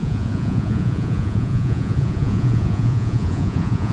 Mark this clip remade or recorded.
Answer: remade